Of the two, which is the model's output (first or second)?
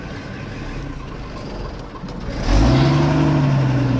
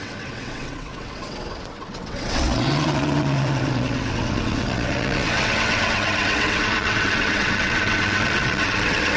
second